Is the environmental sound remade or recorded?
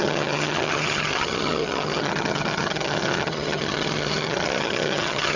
remade